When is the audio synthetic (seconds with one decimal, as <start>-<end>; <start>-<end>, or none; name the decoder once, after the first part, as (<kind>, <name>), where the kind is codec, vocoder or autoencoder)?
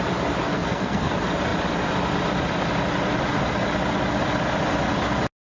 0.5-1.1 (codec, SNAC)